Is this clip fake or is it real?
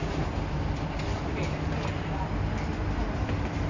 fake